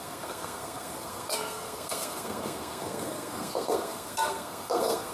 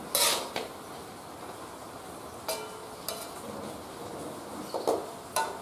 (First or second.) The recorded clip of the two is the second